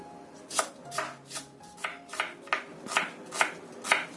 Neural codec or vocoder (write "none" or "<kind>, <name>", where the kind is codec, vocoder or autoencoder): none